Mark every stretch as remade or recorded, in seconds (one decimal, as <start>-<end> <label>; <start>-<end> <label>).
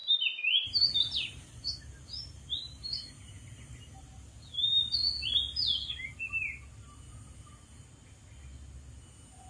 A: 0.0-9.5 recorded